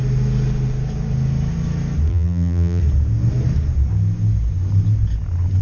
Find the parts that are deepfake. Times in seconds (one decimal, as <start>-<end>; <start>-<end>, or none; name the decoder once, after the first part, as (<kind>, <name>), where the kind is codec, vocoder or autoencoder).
2.1-2.8 (vocoder, BigVGAN v2)